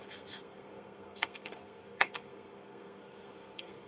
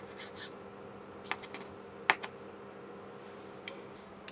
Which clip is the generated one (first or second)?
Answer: first